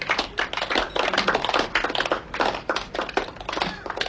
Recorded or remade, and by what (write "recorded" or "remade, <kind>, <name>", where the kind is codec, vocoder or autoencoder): recorded